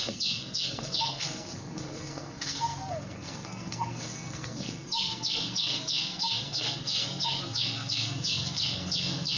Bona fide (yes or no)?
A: no